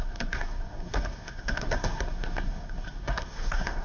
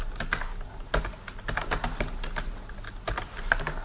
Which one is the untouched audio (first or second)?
second